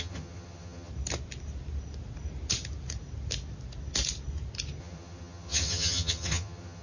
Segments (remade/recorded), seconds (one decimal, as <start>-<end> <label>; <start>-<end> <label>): 0.0-0.9 remade; 0.9-4.8 recorded; 4.8-6.8 remade

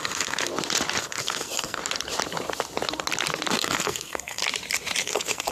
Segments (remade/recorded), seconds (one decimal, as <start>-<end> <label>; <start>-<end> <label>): 0.0-0.5 remade; 0.5-1.0 recorded; 1.0-1.8 remade; 1.8-3.5 recorded; 3.5-4.4 remade; 4.4-5.0 recorded; 5.0-5.5 remade

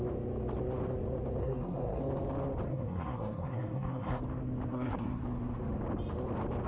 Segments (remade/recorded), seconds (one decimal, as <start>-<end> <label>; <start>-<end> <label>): 0.0-1.4 recorded; 1.4-2.0 remade; 2.0-2.7 recorded; 2.7-4.2 remade; 4.2-4.7 recorded; 4.7-5.2 remade; 5.2-6.7 recorded

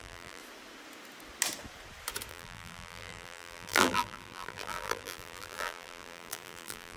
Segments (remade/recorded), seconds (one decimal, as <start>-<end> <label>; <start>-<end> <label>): 0.0-0.4 remade; 0.4-2.3 recorded; 2.3-7.0 remade

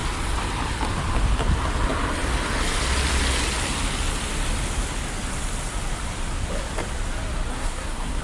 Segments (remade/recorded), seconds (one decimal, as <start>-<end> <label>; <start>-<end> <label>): 0.0-7.5 recorded; 7.5-8.2 remade

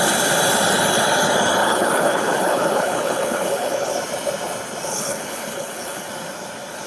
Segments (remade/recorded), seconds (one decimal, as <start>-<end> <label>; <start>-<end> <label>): 0.0-1.6 recorded; 1.6-3.9 remade; 3.9-4.9 recorded; 4.9-6.1 remade; 6.1-6.9 recorded

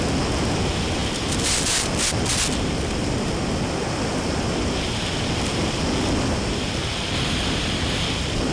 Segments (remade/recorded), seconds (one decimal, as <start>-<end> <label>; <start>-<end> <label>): 0.0-8.5 recorded